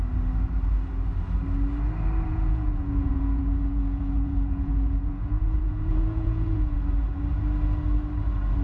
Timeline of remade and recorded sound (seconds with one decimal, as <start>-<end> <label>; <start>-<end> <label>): 0.0-2.3 recorded; 2.3-6.8 remade; 6.8-8.6 recorded